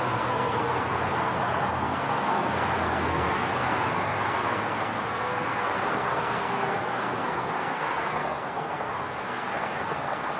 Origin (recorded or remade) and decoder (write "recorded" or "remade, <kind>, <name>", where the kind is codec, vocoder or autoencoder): remade, codec, SNAC